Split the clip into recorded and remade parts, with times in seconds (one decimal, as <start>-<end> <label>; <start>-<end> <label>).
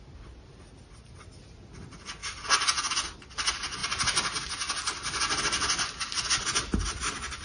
0.0-7.4 recorded